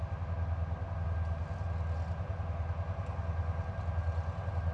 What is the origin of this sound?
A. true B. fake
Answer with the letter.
A